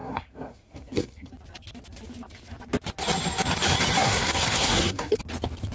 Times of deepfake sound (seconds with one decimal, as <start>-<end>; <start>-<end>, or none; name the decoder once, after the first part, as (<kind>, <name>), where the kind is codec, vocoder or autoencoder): 0.0-1.3 (codec, SNAC); 4.0-5.2